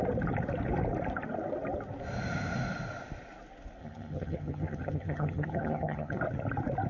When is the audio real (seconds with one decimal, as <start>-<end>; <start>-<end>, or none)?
0.0-3.8; 6.2-6.9